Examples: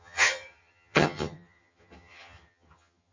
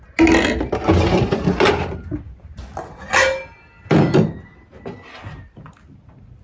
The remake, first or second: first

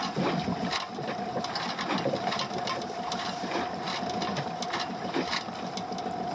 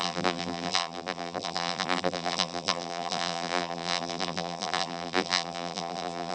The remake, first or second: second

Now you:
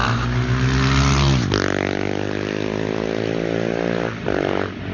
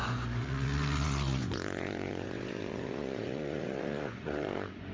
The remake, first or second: second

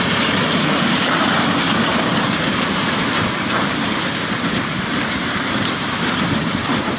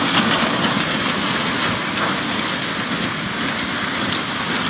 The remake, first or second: first